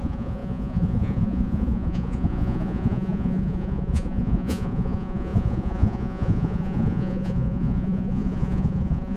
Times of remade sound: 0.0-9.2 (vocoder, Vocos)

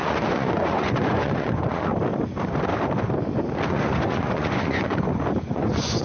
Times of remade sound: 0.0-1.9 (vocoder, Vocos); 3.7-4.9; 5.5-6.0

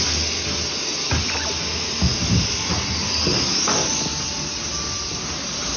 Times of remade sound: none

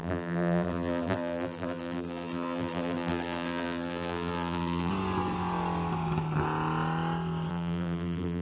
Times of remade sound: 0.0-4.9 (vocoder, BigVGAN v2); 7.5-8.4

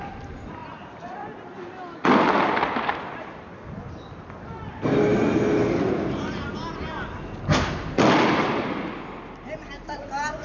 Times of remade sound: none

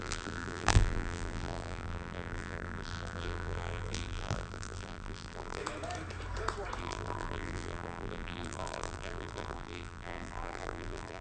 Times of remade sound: 0.0-5.6 (vocoder, BigVGAN v2); 6.8-11.2

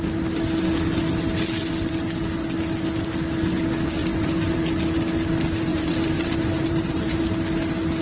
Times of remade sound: 4.0-4.6 (vocoder, BigVGAN v2); 5.7-7.2